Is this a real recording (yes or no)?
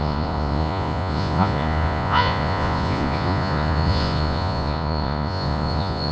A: no